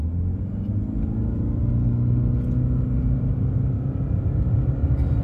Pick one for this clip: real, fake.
real